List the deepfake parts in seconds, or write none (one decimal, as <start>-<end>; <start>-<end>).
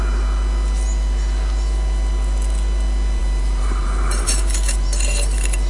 3.2-5.7